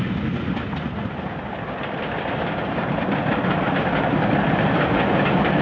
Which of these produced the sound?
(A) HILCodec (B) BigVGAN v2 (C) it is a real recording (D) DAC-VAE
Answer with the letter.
C